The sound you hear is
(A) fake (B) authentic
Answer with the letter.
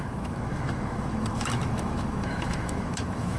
A